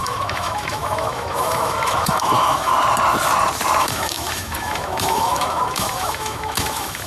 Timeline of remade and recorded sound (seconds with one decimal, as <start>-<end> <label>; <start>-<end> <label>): 0.0-2.7 remade; 2.7-3.8 recorded; 3.8-7.1 remade